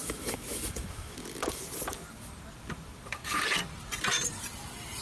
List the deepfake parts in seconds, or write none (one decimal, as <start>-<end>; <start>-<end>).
0.0-1.6